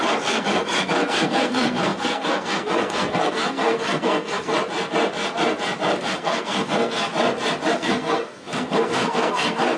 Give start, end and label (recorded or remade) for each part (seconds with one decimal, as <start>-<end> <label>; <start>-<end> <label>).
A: 0.0-4.5 remade; 4.5-6.0 recorded; 6.0-7.1 remade; 7.1-7.7 recorded; 7.7-9.8 remade